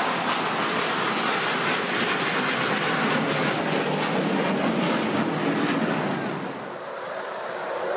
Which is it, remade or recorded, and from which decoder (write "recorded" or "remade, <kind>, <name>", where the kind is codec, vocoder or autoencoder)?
recorded